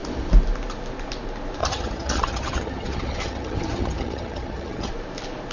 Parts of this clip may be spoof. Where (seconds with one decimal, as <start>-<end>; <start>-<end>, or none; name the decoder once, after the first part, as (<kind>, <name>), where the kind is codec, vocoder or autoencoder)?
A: 1.6-4.9 (vocoder, HiFi-GAN)